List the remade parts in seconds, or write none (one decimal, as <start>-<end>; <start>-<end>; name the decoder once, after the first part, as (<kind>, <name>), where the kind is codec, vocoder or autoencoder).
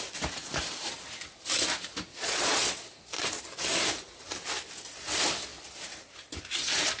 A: 2.1-2.9 (vocoder, Vocos)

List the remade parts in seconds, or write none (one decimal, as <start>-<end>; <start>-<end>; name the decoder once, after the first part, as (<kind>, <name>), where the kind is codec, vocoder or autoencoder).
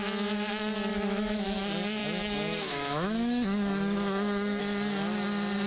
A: 0.9-1.6 (autoencoder, DAC-VAE); 2.0-4.6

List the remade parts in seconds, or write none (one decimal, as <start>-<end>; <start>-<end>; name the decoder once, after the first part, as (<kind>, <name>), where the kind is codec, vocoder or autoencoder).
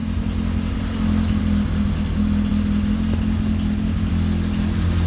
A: none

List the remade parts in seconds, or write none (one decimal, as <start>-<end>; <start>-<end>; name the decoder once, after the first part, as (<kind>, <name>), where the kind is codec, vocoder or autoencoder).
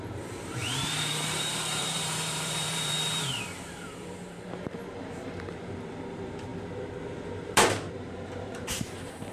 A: 0.0-6.5 (vocoder, BigVGAN v2); 7.2-9.3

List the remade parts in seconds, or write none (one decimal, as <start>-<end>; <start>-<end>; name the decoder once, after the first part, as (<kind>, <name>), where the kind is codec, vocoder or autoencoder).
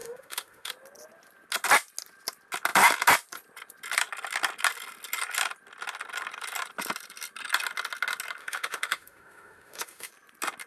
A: 0.0-0.7 (autoencoder, DAC-VAE); 8.4-10.1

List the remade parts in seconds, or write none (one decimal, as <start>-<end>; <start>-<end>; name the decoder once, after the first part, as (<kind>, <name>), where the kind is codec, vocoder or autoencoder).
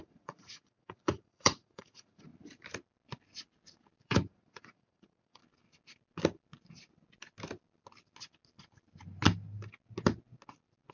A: 0.0-2.3 (vocoder, Vocos); 4.0-5.4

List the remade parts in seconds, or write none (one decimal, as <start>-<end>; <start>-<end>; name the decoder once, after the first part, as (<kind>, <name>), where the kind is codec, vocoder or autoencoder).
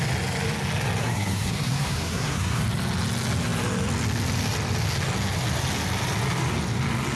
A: 1.0-2.6 (codec, SNAC)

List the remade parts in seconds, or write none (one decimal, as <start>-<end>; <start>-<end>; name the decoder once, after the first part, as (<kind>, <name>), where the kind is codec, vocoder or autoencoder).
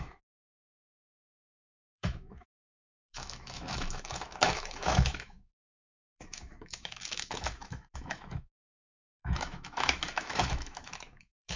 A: 0.0-11.6 (autoencoder, DAC-VAE)